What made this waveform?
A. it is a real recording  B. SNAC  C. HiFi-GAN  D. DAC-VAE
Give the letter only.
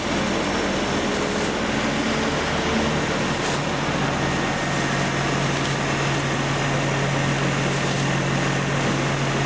A